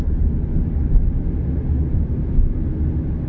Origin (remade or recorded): recorded